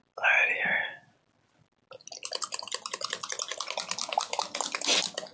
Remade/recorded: recorded